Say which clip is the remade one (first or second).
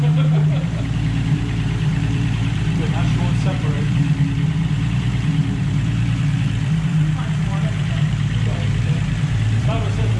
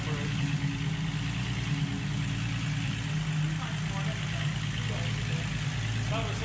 first